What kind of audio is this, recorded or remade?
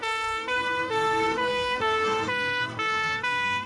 remade